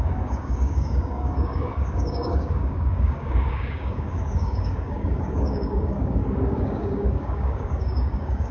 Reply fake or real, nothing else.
fake